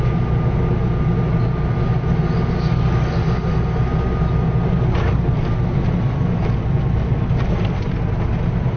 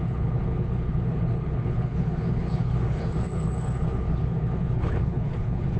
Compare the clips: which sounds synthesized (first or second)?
second